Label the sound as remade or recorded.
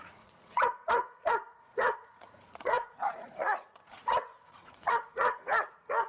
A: remade